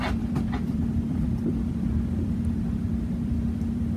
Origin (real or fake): fake